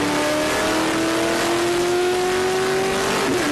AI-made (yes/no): no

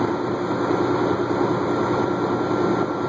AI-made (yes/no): no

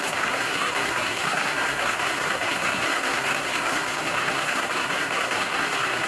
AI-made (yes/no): yes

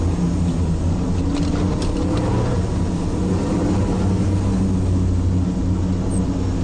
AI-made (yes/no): no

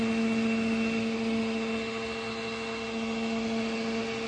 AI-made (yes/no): no